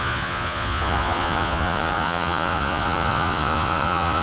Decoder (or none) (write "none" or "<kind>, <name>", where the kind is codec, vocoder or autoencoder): vocoder, Vocos